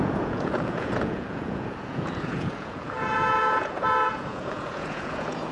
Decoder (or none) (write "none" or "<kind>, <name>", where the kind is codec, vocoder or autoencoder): vocoder, Vocos